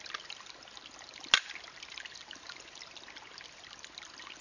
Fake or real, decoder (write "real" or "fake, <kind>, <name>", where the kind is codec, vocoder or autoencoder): real